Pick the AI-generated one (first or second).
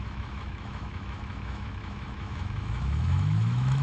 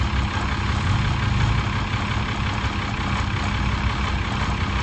first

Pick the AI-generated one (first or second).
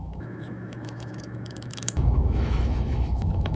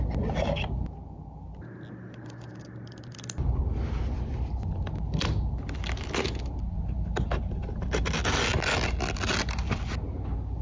first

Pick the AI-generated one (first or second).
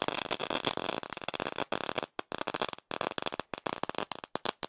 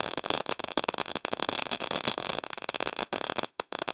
second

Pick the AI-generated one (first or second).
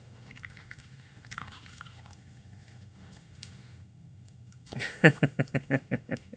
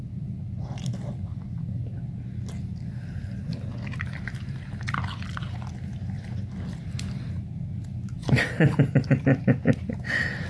first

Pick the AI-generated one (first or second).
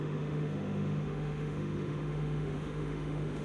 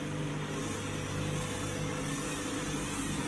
first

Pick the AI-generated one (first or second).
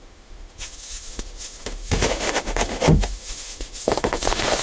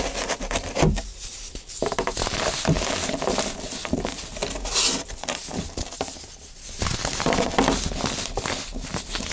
first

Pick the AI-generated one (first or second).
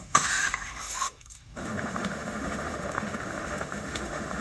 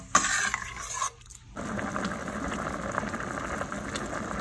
first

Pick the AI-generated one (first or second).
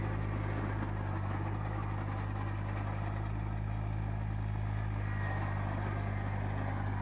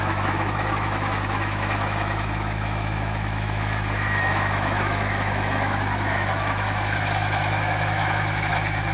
second